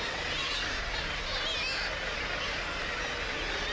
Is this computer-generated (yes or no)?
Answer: no